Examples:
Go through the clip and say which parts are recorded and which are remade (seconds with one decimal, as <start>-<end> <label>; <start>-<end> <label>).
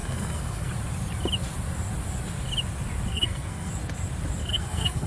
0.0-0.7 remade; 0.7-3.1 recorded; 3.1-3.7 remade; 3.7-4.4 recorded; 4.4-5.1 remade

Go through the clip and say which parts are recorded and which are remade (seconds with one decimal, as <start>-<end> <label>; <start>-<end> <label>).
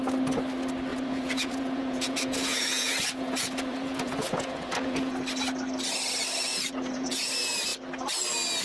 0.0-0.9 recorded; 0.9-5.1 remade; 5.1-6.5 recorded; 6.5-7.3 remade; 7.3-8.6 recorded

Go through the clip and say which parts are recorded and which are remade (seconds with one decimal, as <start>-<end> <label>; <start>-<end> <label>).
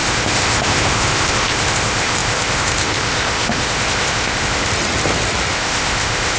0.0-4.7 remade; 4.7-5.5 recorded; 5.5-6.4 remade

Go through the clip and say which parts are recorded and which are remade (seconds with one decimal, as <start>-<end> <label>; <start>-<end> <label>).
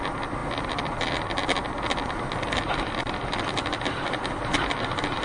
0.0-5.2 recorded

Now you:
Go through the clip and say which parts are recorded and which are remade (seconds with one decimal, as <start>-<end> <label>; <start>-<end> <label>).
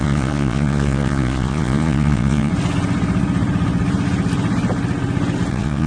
0.0-2.5 remade; 2.5-5.5 recorded; 5.5-5.9 remade